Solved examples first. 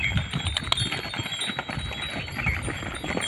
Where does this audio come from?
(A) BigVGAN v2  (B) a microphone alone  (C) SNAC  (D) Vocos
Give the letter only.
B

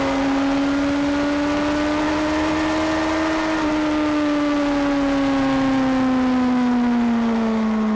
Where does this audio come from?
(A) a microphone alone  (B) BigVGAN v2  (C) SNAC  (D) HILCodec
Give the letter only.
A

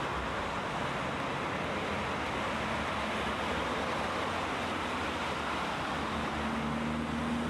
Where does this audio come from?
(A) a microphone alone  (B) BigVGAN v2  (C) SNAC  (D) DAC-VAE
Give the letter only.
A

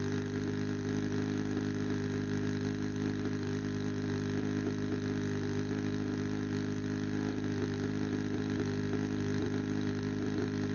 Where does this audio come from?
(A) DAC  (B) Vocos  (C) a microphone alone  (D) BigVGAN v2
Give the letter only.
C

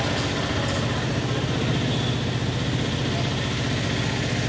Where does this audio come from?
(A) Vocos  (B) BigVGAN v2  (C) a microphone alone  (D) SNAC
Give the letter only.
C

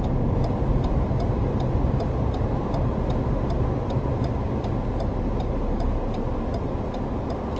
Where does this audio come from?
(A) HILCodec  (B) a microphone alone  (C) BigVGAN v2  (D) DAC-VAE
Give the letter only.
B